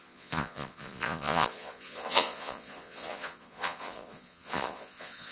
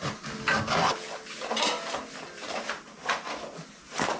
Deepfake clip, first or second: first